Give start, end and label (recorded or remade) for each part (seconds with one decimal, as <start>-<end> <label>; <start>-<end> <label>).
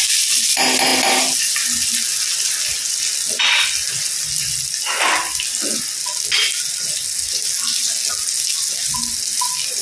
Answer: 0.0-9.8 recorded